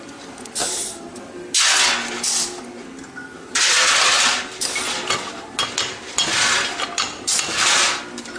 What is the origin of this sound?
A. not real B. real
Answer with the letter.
B